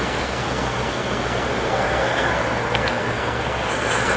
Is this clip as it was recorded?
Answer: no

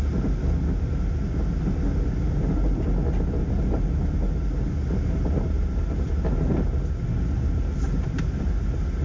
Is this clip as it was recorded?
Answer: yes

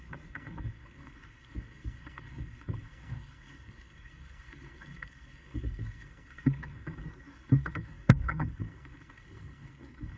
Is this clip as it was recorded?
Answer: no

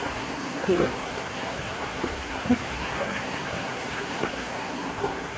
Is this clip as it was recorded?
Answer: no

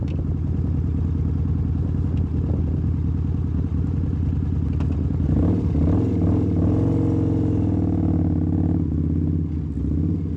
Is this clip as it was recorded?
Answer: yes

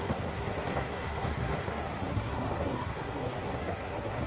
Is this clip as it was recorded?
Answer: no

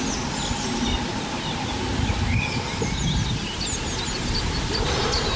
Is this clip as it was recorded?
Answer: yes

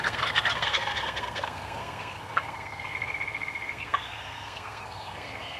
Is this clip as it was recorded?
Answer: no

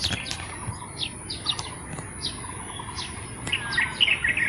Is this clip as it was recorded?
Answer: yes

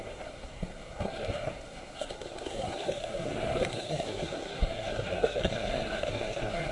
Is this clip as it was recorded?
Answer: no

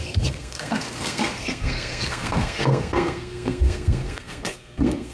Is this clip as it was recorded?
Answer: no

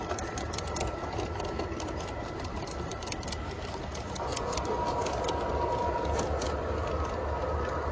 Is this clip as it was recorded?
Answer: yes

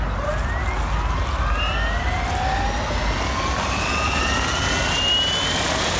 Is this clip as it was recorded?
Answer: yes